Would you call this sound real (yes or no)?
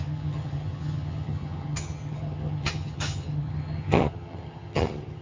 no